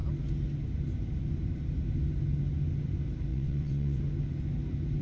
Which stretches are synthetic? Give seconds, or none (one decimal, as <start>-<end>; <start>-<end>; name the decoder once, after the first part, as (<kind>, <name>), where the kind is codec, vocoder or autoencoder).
3.3-4.0 (vocoder, WaveNeXt)